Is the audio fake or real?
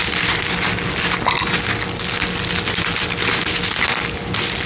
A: real